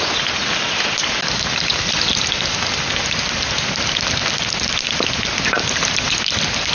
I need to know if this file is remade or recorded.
recorded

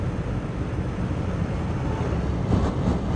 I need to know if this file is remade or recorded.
recorded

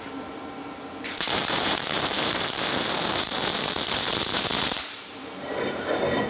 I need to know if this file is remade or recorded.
remade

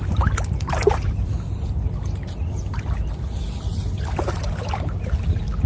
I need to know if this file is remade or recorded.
recorded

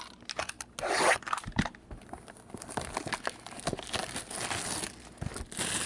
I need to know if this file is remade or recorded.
recorded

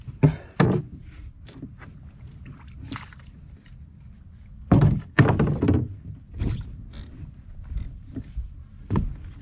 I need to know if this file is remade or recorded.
recorded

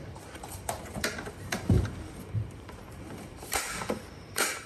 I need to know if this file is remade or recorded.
remade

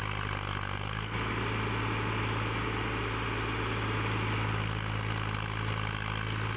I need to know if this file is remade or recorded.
recorded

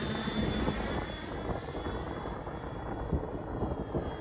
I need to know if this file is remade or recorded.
recorded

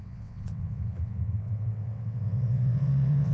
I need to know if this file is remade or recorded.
remade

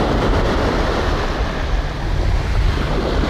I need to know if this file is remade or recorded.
recorded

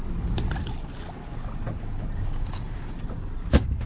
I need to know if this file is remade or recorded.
recorded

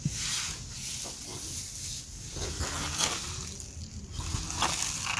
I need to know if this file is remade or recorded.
recorded